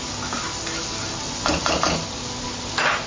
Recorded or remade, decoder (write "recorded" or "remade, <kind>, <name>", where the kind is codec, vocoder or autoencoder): recorded